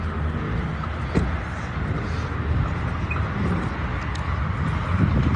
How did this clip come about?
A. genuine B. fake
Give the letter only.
A